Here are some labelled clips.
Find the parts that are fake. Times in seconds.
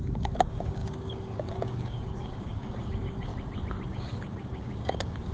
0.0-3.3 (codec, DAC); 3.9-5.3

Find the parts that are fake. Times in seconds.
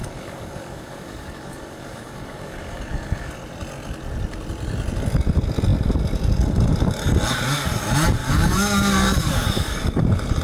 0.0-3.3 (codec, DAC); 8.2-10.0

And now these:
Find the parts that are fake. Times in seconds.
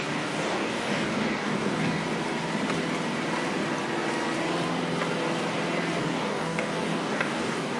0.0-2.0 (codec, DAC); 6.0-7.8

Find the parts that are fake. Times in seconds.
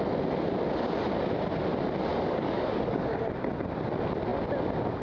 2.1-3.2 (codec, DAC)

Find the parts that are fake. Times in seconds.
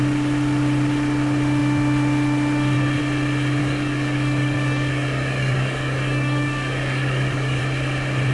3.6-7.6 (codec, DAC)